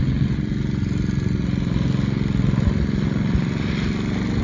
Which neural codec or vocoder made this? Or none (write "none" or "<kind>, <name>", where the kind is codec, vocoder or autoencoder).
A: none